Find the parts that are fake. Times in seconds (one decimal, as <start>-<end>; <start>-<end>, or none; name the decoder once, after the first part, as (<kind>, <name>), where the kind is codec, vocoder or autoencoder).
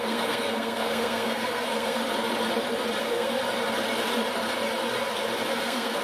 0.0-2.0 (codec, SNAC); 3.0-3.4; 5.5-6.0